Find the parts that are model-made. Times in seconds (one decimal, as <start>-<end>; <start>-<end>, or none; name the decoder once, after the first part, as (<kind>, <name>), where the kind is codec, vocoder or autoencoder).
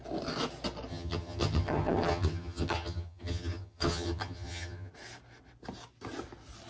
0.9-4.9 (vocoder, HiFi-GAN)